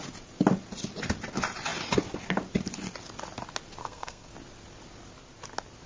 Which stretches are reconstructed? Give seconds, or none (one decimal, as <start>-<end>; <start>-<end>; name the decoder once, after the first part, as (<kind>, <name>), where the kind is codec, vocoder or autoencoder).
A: 3.8-4.3 (codec, SNAC)